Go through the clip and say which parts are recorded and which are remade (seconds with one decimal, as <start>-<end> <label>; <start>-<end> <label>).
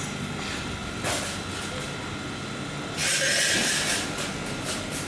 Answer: 0.0-5.1 recorded